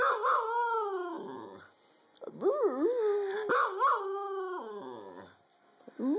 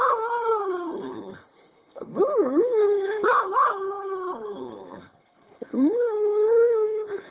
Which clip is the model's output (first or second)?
second